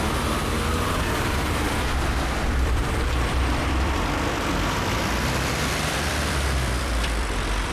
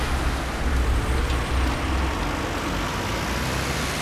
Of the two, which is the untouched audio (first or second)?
second